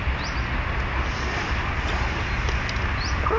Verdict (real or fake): real